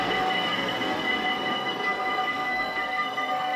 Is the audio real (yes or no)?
no